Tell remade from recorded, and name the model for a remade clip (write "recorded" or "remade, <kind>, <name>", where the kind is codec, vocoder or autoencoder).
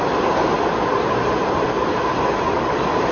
recorded